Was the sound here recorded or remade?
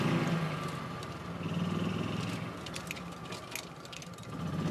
recorded